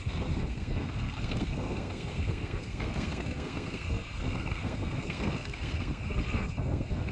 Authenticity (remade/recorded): remade